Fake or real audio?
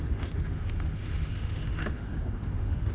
fake